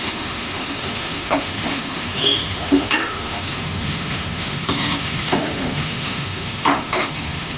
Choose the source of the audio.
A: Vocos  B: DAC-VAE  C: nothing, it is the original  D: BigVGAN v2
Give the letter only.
B